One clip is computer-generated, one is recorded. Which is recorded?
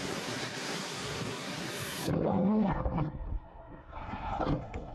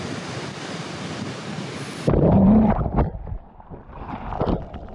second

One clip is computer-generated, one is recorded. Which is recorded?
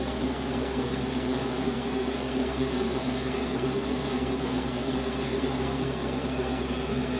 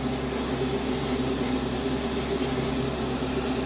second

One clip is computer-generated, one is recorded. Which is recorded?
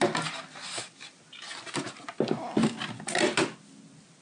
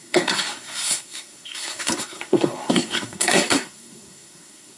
first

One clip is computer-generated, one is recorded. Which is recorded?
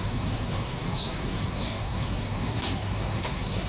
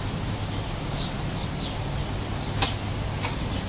second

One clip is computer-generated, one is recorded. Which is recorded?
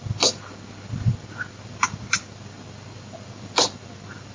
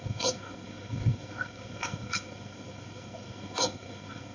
first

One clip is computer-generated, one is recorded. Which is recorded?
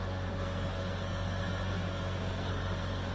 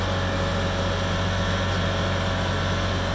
second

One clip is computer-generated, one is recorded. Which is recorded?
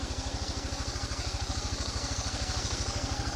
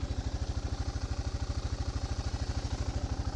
second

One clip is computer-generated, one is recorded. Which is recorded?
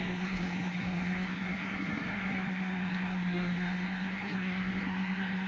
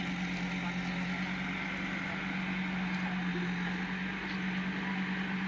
second